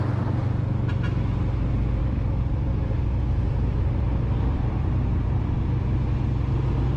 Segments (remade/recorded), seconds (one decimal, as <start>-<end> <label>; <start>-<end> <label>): 0.0-2.0 recorded; 2.0-5.4 remade; 5.4-7.0 recorded